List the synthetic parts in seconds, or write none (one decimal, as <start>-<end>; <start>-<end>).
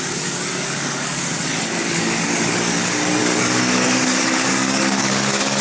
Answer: 0.0-5.6